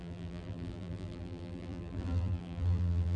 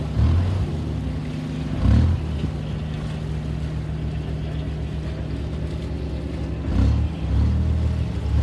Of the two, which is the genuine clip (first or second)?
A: second